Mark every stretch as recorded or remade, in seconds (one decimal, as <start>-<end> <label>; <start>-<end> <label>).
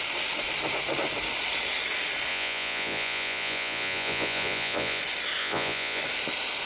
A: 0.0-2.3 recorded; 2.3-5.0 remade; 5.0-5.4 recorded; 5.4-6.0 remade; 6.0-6.7 recorded